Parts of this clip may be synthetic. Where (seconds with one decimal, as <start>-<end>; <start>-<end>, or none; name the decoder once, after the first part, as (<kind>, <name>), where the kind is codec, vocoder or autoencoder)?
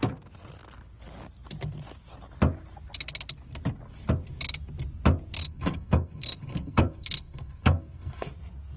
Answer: 5.4-8.3 (codec, SNAC)